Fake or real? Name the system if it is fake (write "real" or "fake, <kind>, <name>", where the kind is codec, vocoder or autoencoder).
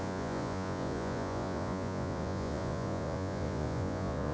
fake, vocoder, Vocos